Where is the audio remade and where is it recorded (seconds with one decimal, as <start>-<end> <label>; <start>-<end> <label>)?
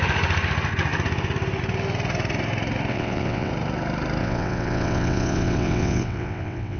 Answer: 0.0-2.9 recorded; 2.9-3.5 remade; 3.5-4.2 recorded; 4.2-6.8 remade